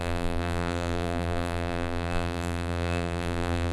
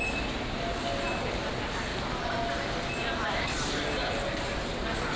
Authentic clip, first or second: second